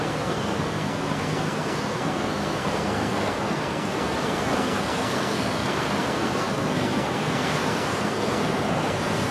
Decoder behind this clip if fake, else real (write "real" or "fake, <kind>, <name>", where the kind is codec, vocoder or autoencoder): fake, codec, SNAC